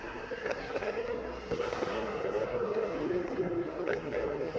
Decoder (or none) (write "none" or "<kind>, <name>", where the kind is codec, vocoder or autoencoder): codec, SNAC